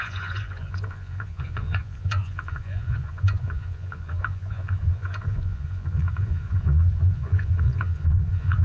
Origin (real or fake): fake